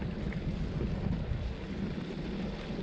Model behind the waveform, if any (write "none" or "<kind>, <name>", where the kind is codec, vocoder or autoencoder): none